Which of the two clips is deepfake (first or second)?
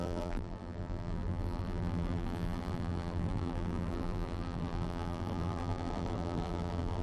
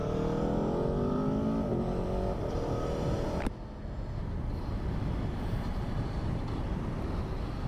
first